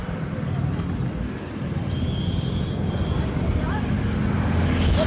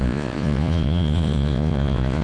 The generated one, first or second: second